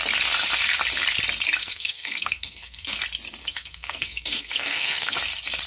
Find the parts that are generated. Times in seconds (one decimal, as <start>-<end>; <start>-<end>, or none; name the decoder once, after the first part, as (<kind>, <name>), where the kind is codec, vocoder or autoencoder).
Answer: 1.6-3.0 (codec, SNAC); 3.4-5.1